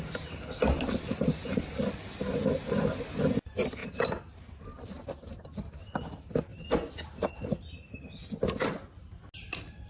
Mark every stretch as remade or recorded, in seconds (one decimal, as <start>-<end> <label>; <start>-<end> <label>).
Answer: 0.0-9.9 recorded